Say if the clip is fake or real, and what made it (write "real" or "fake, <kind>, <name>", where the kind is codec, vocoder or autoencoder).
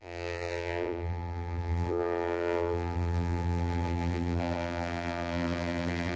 fake, vocoder, BigVGAN v2